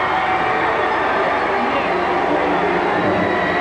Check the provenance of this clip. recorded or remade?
recorded